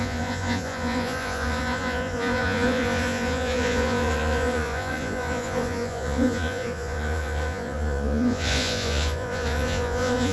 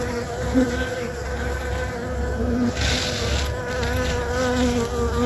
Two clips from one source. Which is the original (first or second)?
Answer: second